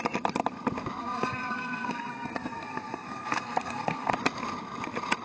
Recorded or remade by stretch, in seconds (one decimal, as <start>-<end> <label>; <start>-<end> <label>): 0.0-1.0 recorded; 1.0-4.1 remade; 4.1-5.2 recorded